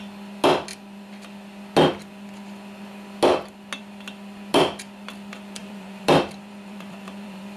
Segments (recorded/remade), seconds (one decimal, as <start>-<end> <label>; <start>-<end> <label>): 0.0-4.5 recorded; 4.5-5.1 remade; 5.1-5.6 recorded; 5.6-7.6 remade